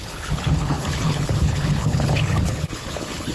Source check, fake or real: fake